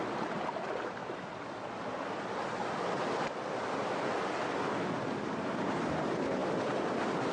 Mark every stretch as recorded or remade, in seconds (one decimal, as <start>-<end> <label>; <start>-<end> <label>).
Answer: 0.0-7.3 recorded